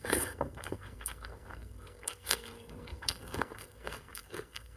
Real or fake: fake